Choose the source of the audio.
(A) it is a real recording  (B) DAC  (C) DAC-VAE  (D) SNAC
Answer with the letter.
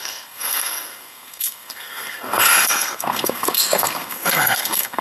D